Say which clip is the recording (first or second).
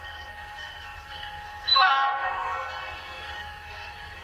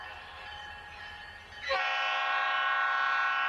second